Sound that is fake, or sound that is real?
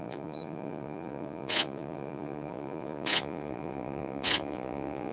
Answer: fake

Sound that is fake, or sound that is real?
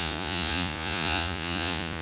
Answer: fake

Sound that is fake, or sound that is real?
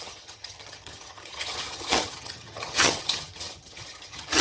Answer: fake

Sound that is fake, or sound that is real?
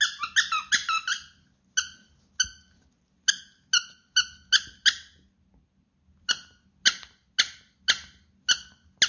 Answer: real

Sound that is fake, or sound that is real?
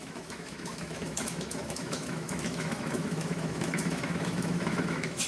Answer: fake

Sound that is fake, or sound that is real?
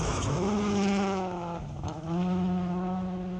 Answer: fake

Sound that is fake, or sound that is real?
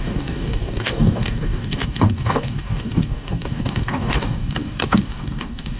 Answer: fake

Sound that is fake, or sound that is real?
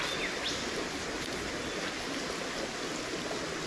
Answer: real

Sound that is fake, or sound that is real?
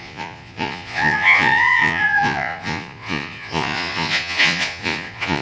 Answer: fake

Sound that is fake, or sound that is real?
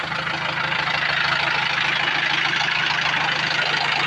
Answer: real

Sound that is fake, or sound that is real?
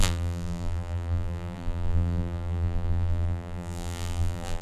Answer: fake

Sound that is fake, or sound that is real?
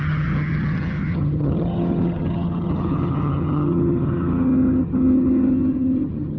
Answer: fake